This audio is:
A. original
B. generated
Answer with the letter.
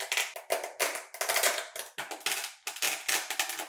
A